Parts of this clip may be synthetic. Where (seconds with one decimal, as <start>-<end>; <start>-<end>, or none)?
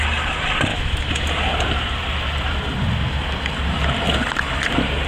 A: 0.7-1.2